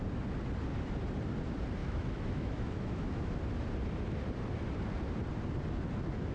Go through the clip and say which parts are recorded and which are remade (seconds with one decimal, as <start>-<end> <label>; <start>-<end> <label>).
0.0-1.8 recorded; 1.8-3.3 remade; 3.3-6.3 recorded